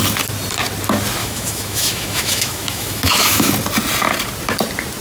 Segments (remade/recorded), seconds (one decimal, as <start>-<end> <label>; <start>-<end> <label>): 0.0-1.2 recorded; 1.2-3.5 remade; 3.5-5.0 recorded